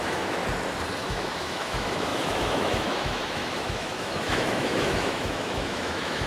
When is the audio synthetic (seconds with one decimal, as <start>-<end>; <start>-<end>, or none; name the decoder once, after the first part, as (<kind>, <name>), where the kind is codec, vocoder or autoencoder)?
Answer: 0.0-0.4 (autoencoder, DAC-VAE); 1.0-6.3